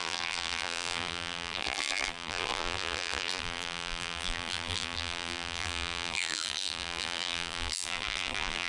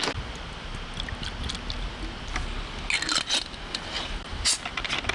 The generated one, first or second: first